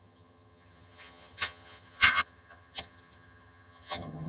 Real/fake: fake